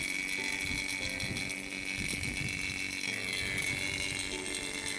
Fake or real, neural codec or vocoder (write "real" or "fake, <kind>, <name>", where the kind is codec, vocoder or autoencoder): real